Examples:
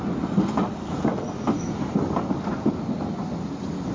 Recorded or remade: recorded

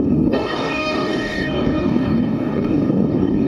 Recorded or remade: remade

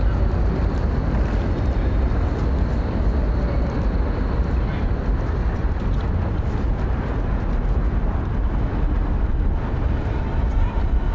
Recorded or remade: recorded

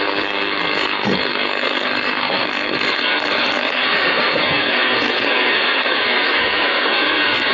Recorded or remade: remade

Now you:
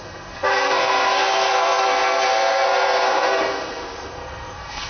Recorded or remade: remade